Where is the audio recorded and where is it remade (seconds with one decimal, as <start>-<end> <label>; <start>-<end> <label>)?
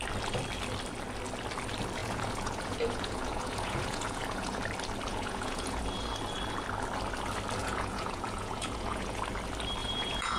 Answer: 0.0-2.0 recorded; 2.0-4.6 remade; 4.6-5.1 recorded; 5.1-5.8 remade; 5.8-7.6 recorded; 7.6-9.2 remade; 9.2-9.8 recorded; 9.8-10.4 remade